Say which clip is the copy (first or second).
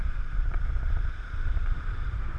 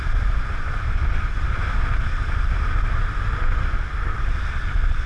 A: first